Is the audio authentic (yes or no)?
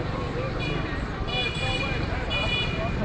yes